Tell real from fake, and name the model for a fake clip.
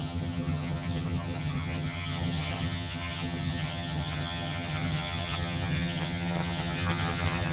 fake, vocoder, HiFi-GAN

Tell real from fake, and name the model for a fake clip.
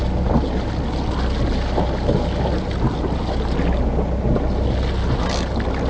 real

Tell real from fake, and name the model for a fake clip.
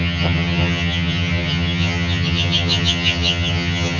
fake, vocoder, HiFi-GAN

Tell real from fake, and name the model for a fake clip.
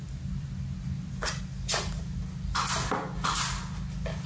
real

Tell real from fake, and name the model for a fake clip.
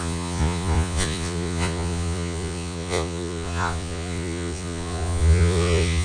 fake, vocoder, Vocos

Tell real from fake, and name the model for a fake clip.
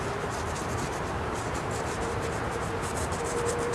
fake, vocoder, BigVGAN v2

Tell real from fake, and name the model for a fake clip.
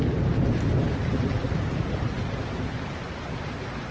real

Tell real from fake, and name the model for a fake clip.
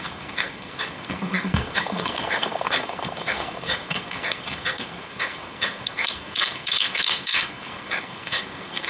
fake, codec, SNAC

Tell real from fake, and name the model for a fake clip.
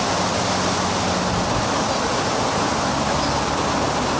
real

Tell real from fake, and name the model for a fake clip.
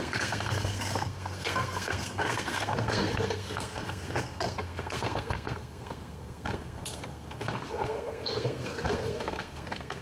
fake, codec, SNAC